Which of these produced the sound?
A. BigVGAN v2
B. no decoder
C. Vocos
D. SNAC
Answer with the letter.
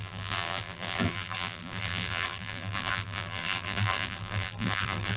A